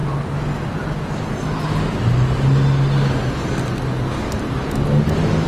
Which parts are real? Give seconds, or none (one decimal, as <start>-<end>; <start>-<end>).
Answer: 0.0-5.5

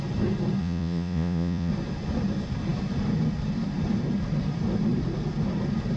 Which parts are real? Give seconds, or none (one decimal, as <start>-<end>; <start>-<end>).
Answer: 0.0-0.6; 1.7-6.0

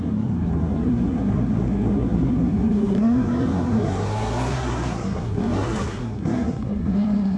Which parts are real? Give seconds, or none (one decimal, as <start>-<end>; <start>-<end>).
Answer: none